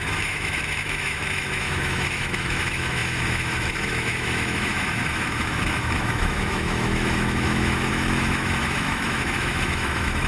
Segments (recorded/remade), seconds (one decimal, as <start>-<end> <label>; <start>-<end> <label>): 0.0-10.3 remade